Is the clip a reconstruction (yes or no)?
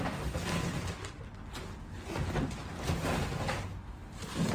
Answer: no